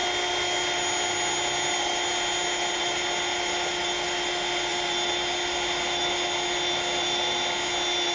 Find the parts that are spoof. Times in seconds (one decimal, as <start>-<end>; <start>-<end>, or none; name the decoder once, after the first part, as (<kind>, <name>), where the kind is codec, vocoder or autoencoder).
none